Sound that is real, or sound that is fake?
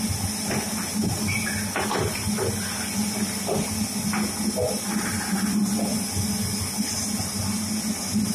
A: real